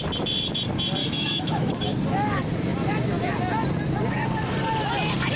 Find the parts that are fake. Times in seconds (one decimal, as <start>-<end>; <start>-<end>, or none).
1.0-1.7